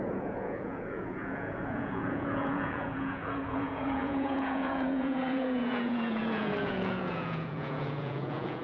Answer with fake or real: fake